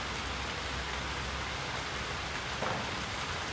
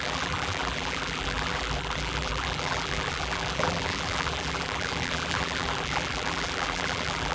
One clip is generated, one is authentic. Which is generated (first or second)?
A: second